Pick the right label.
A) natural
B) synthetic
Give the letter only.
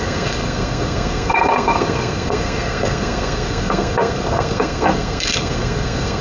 B